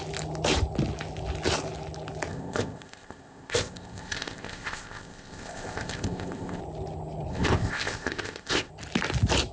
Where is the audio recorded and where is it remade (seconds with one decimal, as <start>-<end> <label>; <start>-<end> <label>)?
0.0-2.3 recorded; 2.3-6.6 remade; 6.6-7.3 recorded; 7.3-8.7 remade; 8.7-9.5 recorded